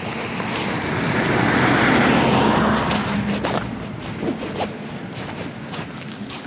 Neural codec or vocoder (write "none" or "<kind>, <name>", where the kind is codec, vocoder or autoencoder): none